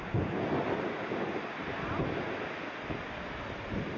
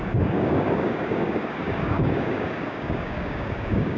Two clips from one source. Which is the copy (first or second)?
second